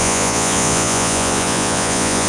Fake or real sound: fake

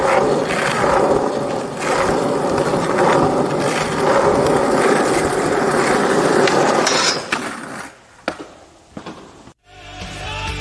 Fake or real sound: real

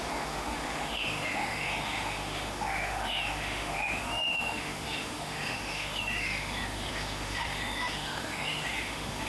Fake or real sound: fake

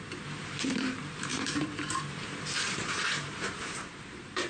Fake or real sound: fake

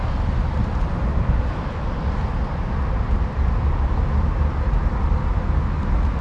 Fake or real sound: real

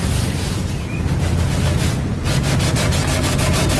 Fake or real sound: real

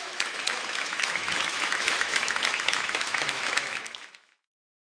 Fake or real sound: fake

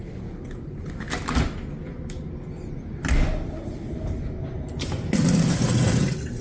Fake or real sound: real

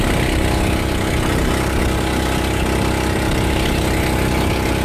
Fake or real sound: real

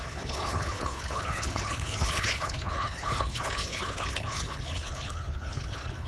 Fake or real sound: fake